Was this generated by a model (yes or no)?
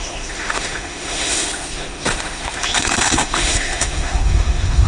yes